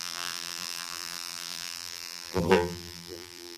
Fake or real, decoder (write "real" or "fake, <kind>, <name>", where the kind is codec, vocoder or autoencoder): fake, vocoder, BigVGAN v2